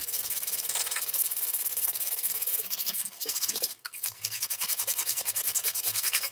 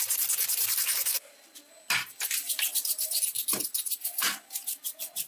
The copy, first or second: first